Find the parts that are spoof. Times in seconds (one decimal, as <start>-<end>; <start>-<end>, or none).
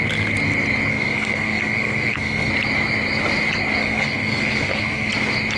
0.9-2.5; 3.8-5.1